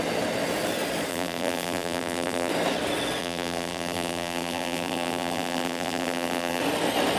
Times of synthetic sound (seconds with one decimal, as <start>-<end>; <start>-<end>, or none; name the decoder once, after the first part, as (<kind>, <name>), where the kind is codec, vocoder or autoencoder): 1.1-2.5 (vocoder, BigVGAN v2); 3.2-6.6